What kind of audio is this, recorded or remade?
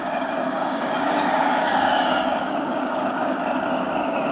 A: remade